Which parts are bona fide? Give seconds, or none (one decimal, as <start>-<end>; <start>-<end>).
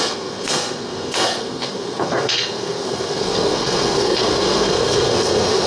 none